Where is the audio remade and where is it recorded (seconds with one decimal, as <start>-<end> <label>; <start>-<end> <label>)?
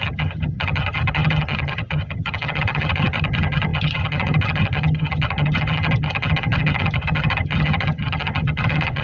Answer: 0.0-9.0 remade